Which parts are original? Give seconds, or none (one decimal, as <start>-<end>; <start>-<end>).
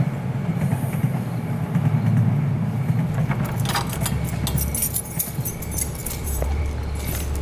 0.0-0.5; 3.2-4.8; 5.5-6.0; 6.6-7.4